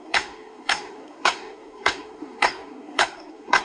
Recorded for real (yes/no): no